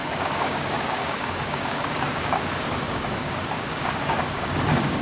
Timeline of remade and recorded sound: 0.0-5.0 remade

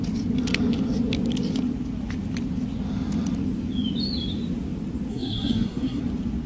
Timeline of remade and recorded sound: 0.0-5.1 recorded; 5.1-6.0 remade; 6.0-6.5 recorded

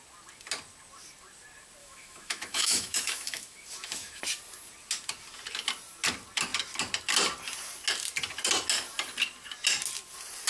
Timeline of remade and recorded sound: 0.0-1.8 recorded; 1.8-4.2 remade; 4.2-10.5 recorded

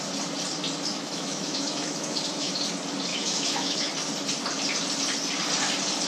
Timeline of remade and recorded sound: 0.0-0.9 recorded; 0.9-2.5 remade; 2.5-3.1 recorded; 3.1-3.9 remade; 3.9-6.1 recorded